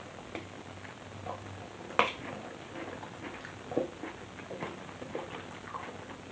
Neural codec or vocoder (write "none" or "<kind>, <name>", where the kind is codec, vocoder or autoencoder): none